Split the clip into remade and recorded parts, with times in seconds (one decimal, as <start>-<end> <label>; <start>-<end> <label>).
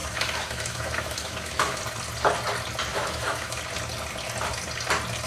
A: 0.0-1.8 remade; 1.8-2.9 recorded; 2.9-3.6 remade; 3.6-5.3 recorded